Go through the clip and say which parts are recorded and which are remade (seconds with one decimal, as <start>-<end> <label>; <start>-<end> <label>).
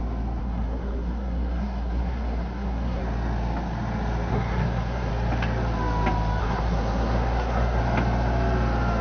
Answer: 0.0-0.4 recorded; 0.4-3.0 remade; 3.0-4.3 recorded; 4.3-5.1 remade; 5.1-6.4 recorded; 6.4-7.8 remade; 7.8-9.0 recorded